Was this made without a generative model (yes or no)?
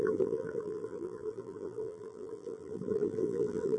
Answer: no